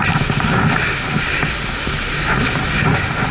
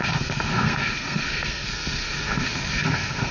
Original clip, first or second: first